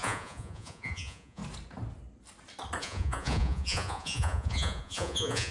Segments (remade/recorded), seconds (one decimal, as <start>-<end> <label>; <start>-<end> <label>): 0.0-1.4 remade; 1.4-2.8 recorded; 2.8-5.5 remade